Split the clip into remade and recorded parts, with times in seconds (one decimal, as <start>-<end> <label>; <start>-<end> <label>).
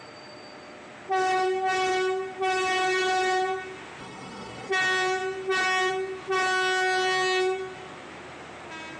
0.0-4.0 recorded; 4.0-4.7 remade; 4.7-9.0 recorded